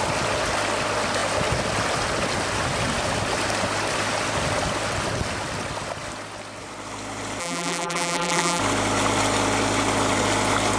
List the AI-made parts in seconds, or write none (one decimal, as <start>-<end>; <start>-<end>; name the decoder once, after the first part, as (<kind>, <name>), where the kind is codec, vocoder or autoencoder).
7.4-8.6 (vocoder, BigVGAN v2)

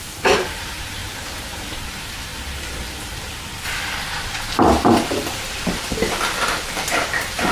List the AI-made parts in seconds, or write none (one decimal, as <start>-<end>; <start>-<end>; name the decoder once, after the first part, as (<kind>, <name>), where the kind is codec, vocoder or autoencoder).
0.0-2.3 (vocoder, BigVGAN v2); 3.0-3.5; 6.9-7.5